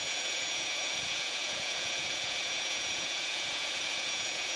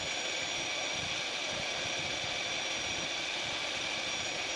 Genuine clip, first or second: second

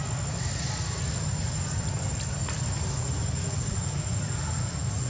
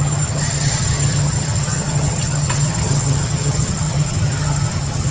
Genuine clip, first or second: first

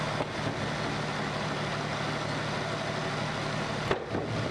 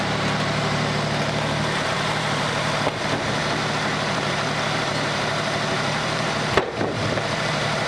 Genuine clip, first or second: first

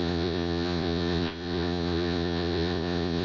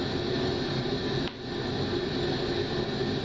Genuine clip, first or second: second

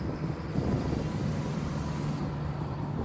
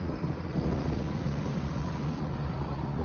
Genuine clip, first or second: first